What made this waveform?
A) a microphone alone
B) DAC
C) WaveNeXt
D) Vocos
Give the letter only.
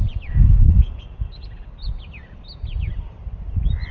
A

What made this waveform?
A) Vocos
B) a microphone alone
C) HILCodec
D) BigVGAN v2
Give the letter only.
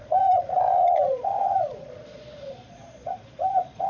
A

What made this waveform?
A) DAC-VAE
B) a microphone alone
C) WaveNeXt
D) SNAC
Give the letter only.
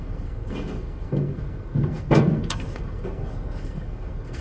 D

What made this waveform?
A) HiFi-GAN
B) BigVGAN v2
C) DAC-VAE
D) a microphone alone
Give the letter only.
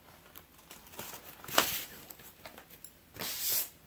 D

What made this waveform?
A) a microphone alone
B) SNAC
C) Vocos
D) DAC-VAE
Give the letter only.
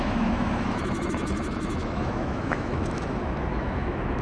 D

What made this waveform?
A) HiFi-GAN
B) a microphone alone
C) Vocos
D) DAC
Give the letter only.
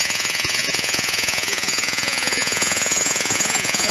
C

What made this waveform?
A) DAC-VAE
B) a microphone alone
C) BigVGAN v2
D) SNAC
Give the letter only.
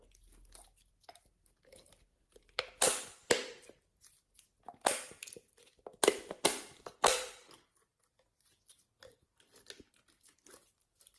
B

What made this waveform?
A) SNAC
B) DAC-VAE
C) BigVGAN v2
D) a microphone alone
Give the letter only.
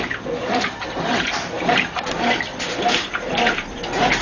C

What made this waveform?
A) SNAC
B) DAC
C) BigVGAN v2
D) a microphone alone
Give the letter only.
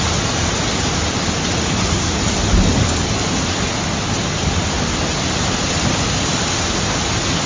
D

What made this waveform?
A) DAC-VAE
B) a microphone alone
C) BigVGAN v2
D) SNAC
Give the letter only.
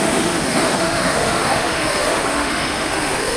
A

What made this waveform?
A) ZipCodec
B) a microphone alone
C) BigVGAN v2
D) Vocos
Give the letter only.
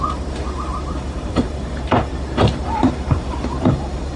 C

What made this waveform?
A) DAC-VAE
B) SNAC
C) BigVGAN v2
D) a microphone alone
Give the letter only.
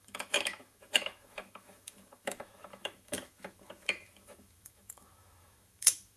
A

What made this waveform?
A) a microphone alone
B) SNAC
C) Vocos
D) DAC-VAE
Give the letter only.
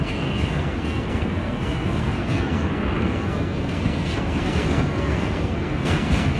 B